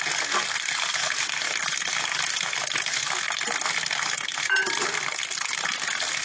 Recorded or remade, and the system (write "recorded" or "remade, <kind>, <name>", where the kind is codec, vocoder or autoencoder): recorded